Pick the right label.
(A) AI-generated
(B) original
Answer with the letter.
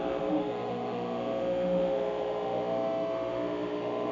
A